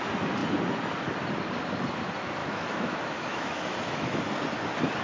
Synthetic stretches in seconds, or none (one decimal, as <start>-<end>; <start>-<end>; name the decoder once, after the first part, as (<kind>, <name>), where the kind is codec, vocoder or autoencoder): 2.4-4.2 (autoencoder, DAC-VAE)